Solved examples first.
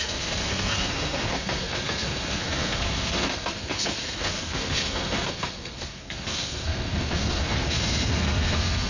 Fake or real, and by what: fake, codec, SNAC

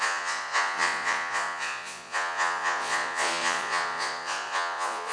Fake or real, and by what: fake, vocoder, Vocos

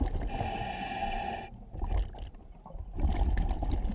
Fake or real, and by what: real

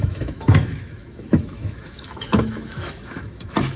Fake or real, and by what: fake, autoencoder, DAC-VAE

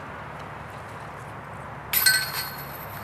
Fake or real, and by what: real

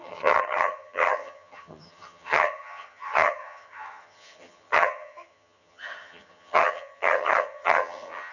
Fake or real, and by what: fake, vocoder, HiFi-GAN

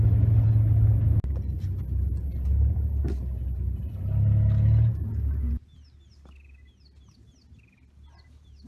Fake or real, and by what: real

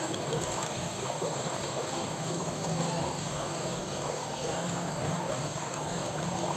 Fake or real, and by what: fake, codec, DAC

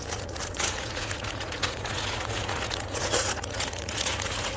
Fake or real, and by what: fake, vocoder, Vocos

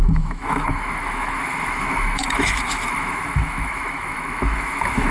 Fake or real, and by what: fake, autoencoder, DAC-VAE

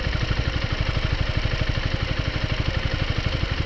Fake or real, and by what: real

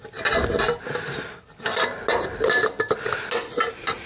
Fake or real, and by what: real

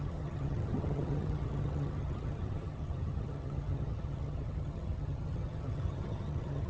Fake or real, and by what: fake, vocoder, HiFi-GAN